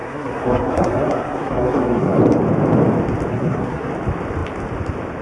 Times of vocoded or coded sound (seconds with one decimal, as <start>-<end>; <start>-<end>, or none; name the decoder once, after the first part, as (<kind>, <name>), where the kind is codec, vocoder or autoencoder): 0.0-2.2 (codec, SNAC); 3.3-3.9